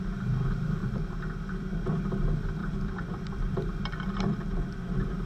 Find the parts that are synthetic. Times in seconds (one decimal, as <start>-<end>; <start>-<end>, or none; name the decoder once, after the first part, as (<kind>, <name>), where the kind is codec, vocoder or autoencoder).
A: 0.8-1.9 (vocoder, BigVGAN v2); 2.6-3.5